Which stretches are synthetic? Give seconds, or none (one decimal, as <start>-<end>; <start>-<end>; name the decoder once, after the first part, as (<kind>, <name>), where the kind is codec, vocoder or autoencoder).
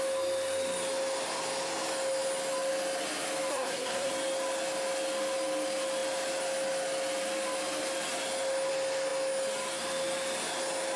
3.5-4.1 (codec, SNAC)